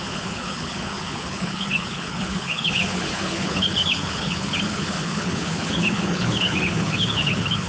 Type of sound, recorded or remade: remade